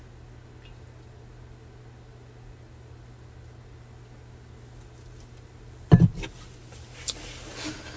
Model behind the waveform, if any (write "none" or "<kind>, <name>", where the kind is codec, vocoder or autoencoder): none